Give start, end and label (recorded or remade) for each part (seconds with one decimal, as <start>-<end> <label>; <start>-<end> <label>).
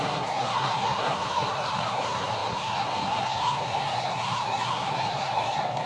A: 0.0-5.9 remade